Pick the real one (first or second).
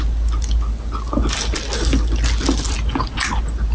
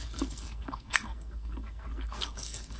first